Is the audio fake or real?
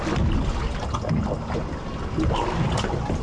real